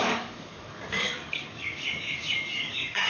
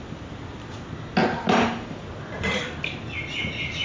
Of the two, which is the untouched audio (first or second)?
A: second